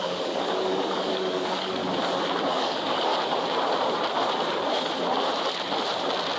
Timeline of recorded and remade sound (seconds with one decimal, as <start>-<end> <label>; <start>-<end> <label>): 0.0-1.8 remade; 1.8-2.5 recorded; 2.5-3.1 remade; 3.1-6.4 recorded